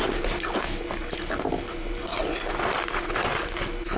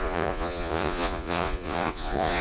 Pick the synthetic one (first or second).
second